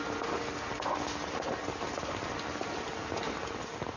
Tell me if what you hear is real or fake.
real